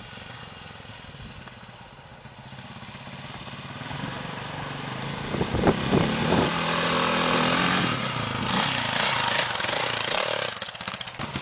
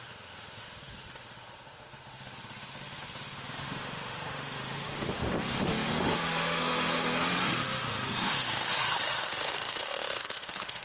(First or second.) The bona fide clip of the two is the first